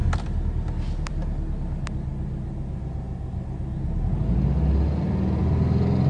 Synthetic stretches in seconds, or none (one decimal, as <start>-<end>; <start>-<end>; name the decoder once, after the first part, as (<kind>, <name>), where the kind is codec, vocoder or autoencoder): none